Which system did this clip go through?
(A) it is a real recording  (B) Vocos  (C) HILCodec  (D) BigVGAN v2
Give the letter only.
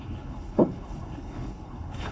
C